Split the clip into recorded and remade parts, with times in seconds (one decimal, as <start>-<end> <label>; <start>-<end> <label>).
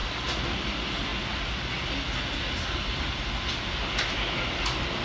0.0-5.0 recorded